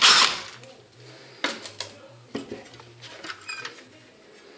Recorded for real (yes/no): yes